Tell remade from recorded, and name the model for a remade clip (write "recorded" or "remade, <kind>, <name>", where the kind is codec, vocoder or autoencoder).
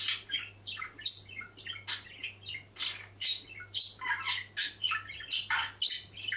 recorded